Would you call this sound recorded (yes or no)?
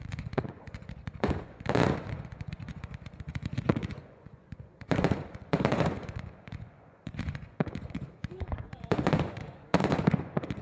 no